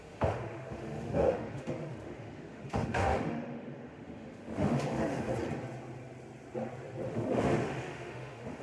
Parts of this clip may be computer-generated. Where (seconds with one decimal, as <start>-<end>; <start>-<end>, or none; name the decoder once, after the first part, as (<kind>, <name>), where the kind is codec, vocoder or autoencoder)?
0.0-5.3 (autoencoder, DAC-VAE); 7.1-8.6